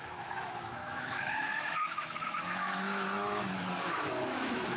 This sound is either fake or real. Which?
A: fake